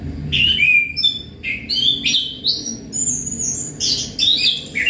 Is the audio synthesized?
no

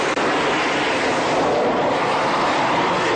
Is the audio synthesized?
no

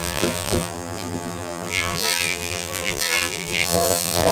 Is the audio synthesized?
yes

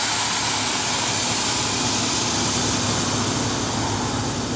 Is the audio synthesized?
no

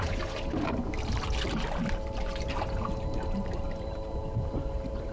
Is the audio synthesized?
yes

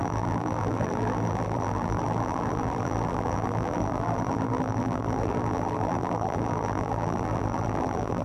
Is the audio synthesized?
yes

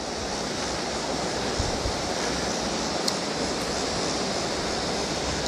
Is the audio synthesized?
no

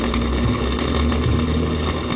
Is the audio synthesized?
no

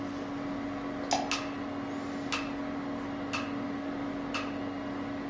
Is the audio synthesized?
no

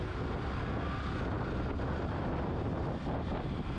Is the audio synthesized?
no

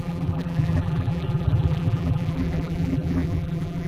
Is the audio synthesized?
yes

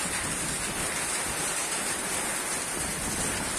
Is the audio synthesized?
no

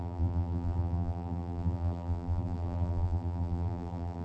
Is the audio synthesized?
yes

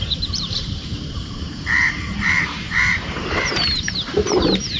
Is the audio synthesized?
yes